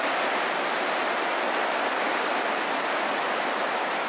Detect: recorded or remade recorded